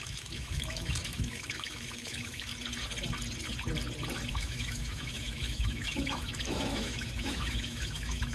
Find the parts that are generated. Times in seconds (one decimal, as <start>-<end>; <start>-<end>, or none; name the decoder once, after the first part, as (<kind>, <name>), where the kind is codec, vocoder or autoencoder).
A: 0.0-2.5 (autoencoder, DAC-VAE); 4.3-8.3